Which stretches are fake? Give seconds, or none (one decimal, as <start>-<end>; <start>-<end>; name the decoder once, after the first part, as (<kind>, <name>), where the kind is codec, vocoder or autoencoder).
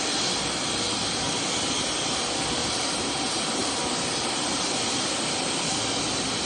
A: 2.6-5.4 (vocoder, BigVGAN v2)